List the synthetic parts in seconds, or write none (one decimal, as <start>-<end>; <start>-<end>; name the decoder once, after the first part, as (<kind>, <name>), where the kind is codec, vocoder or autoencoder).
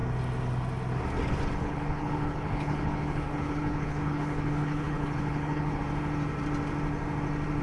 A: 1.6-5.8 (codec, HILCodec)